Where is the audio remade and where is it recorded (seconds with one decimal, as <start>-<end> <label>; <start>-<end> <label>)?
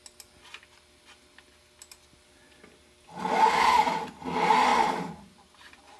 0.0-4.7 recorded; 4.7-5.5 remade; 5.5-6.0 recorded